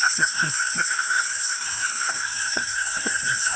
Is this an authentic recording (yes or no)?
no